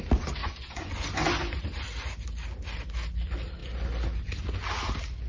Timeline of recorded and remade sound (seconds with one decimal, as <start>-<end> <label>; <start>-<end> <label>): 0.0-0.4 recorded; 0.4-0.9 remade; 0.9-5.3 recorded